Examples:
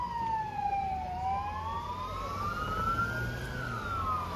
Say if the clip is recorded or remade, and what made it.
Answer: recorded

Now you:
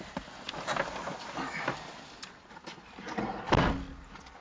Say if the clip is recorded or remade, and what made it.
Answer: recorded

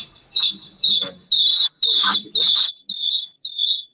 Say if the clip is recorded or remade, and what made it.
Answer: recorded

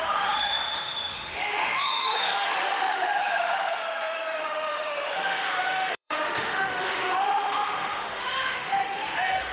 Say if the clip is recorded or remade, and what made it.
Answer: remade, autoencoder, DAC-VAE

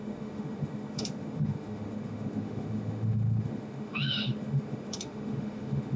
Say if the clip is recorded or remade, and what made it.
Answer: remade, autoencoder, DAC-VAE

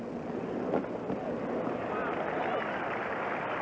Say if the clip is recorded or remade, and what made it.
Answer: recorded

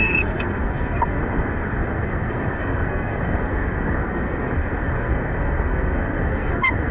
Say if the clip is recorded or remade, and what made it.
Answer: remade, codec, SNAC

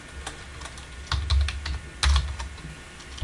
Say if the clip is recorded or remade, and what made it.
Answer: recorded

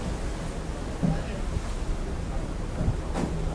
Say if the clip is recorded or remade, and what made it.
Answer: recorded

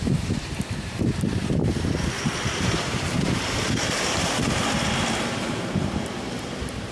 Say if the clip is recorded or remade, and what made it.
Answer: remade, vocoder, BigVGAN v2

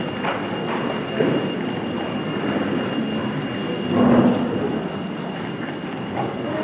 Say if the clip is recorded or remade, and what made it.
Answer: recorded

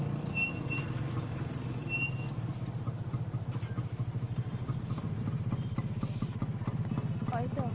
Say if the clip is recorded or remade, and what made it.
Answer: recorded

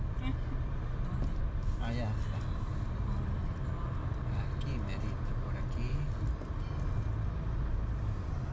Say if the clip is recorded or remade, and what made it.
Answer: recorded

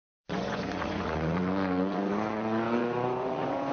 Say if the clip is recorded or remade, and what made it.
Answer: remade, vocoder, Vocos